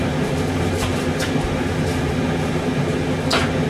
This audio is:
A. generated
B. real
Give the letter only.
B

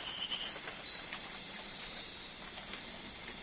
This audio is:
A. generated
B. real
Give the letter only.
A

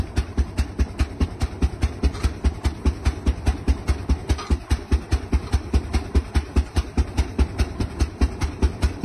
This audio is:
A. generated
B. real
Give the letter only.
A